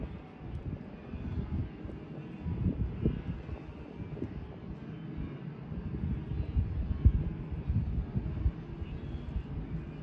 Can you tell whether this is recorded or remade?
recorded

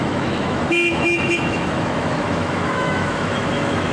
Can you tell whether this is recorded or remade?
remade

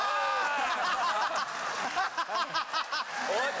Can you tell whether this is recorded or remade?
remade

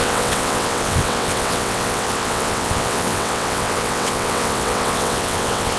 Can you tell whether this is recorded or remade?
remade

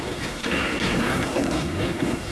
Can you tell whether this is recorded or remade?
remade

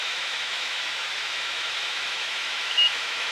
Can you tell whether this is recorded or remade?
remade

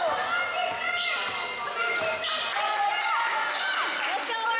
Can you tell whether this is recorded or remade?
recorded